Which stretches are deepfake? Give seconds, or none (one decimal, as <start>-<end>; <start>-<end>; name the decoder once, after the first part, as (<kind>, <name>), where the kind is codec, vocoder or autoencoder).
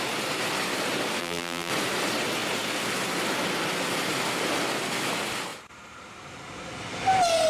1.2-1.7 (vocoder, BigVGAN v2)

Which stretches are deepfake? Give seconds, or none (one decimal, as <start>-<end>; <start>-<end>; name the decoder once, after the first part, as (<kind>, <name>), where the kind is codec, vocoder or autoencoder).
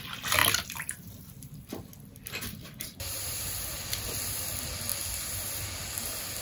0.4-4.2 (vocoder, BigVGAN v2)